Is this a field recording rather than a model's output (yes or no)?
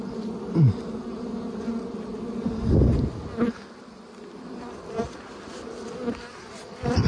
yes